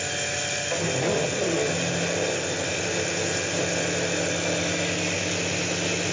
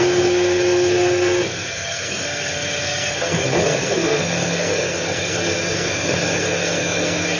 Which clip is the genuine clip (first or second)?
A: first